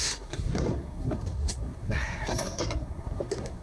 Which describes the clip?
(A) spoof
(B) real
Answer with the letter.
A